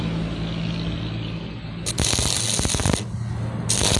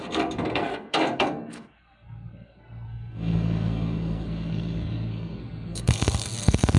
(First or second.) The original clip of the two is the first